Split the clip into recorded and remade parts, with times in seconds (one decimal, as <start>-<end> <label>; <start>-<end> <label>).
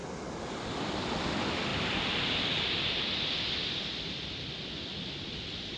0.0-5.8 recorded